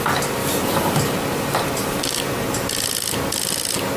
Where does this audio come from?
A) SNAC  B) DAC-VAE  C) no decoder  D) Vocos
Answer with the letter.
C